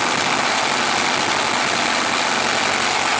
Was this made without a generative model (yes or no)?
yes